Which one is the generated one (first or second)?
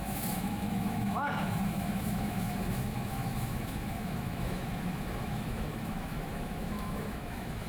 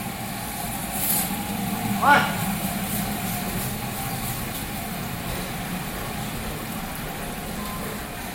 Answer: first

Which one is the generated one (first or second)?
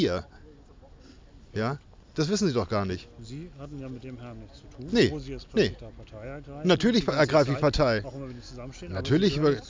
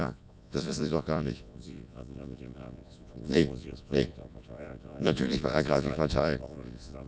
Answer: second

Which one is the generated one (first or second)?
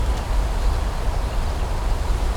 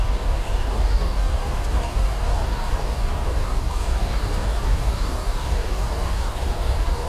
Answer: second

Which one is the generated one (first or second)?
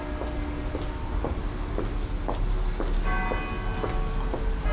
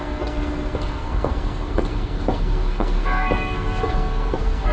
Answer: second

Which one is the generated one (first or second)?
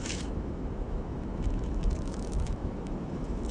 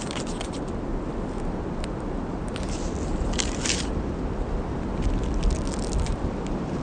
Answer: first